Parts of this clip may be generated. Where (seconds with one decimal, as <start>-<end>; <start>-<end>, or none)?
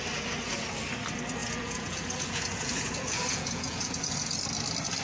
1.4-4.4